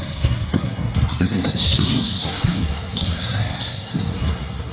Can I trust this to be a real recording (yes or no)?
no